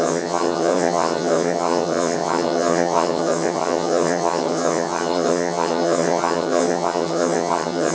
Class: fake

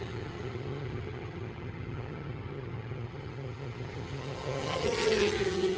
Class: fake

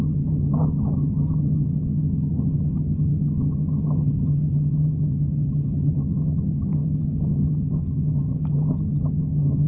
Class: fake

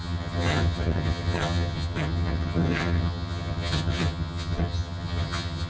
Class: fake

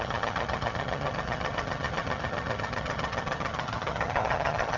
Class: fake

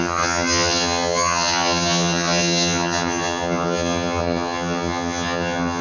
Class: fake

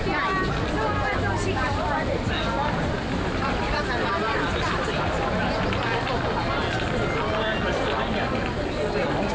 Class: real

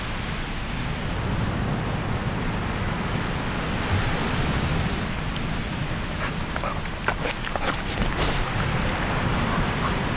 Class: real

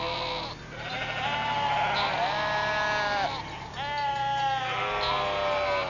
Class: real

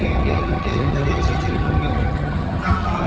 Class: fake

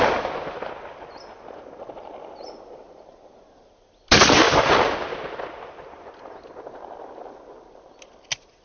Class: real